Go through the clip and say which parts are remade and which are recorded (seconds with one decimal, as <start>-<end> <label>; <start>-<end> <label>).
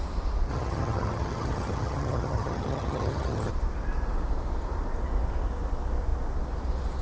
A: 0.0-0.5 recorded; 0.5-3.5 remade; 3.5-7.0 recorded